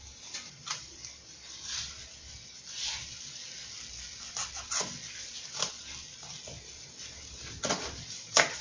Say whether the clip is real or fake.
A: real